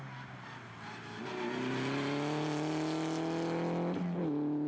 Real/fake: real